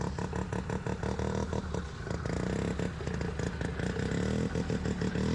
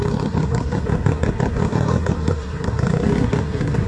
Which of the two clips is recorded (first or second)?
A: first